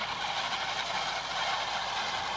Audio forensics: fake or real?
real